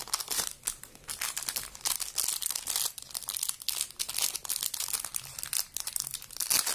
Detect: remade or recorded recorded